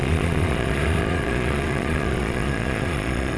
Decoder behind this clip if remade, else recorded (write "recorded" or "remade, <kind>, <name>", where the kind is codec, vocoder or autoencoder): remade, vocoder, Vocos